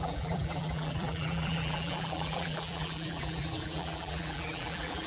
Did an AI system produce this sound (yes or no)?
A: yes